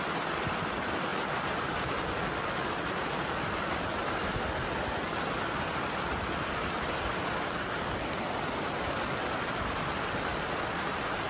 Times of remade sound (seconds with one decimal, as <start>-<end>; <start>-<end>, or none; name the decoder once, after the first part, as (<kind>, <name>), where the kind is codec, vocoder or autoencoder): none